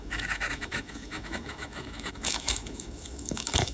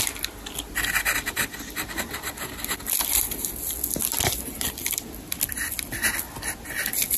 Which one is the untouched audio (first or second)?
second